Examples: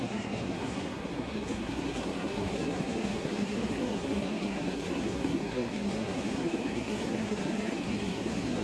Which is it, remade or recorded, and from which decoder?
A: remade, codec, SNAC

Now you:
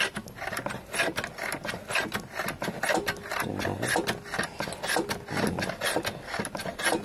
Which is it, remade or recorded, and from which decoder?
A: recorded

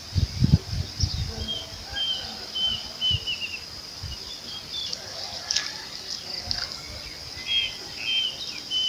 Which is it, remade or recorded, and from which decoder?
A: recorded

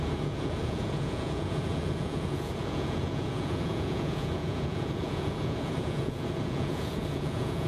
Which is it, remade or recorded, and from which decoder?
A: remade, vocoder, Vocos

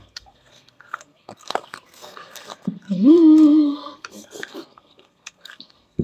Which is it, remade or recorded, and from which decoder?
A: remade, codec, SNAC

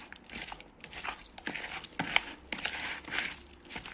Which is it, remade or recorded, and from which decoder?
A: recorded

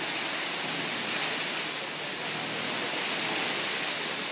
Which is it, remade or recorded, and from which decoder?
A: recorded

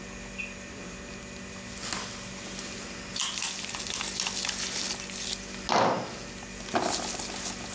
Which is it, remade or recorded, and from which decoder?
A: recorded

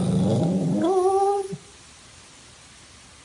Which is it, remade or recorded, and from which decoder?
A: recorded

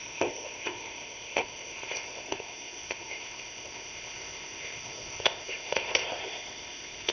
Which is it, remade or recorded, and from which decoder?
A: remade, codec, ZipCodec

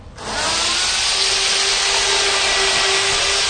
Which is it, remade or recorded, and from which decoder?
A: recorded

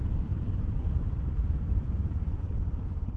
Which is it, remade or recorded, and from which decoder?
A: remade, vocoder, BigVGAN v2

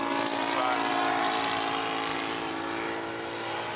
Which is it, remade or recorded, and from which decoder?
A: recorded